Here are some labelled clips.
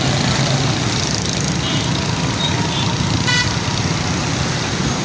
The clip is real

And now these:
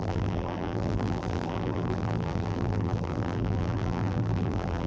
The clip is fake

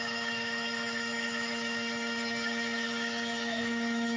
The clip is fake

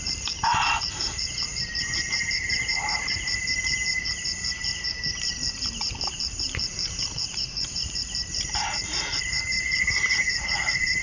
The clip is fake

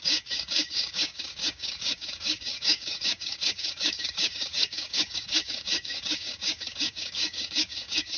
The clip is fake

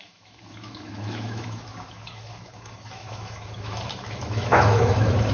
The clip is fake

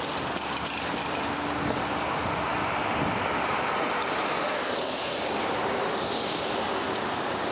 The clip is real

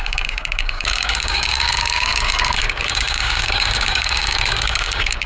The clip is fake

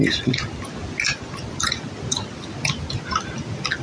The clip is real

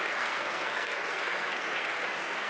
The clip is fake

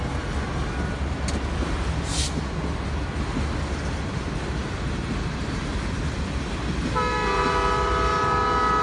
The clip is real